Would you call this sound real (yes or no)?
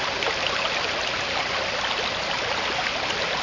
yes